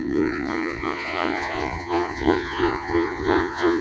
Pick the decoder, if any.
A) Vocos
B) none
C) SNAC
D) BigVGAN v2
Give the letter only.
A